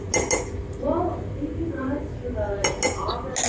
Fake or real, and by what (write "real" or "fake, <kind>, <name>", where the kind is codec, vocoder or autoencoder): real